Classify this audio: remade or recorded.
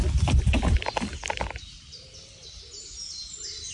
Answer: recorded